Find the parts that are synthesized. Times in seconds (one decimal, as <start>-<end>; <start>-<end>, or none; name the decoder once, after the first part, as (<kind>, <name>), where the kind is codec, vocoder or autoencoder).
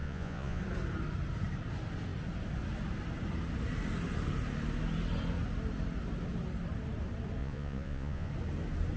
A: 0.0-0.6 (vocoder, Vocos); 7.4-8.3